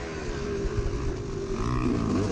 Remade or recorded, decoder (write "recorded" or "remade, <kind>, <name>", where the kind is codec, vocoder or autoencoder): recorded